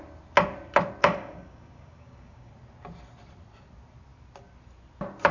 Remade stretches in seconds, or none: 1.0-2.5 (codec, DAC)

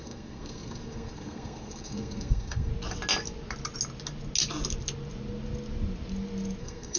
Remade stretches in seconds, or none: 0.0-2.7 (codec, SNAC); 6.6-7.0

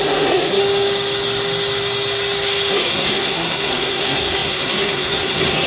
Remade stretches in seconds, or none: 0.0-0.6 (codec, SNAC); 2.7-5.7